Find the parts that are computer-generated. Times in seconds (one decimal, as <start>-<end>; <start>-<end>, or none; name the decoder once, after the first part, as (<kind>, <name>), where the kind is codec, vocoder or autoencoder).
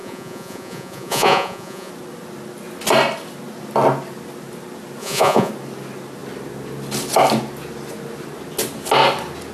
0.0-1.9 (vocoder, Vocos); 5.0-5.5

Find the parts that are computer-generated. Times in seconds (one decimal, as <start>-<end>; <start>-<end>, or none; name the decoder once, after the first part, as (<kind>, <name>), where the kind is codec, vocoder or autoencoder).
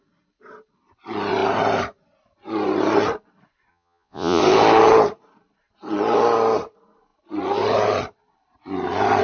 3.7-4.4 (vocoder, Vocos)